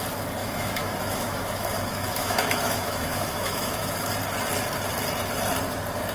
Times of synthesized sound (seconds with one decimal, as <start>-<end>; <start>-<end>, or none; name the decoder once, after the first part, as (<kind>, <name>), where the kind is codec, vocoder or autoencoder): 0.4-4.1 (autoencoder, DAC-VAE)